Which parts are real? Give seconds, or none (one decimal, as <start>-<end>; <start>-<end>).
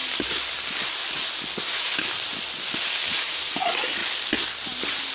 0.0-3.1; 3.6-5.1